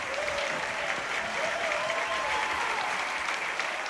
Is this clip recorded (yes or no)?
no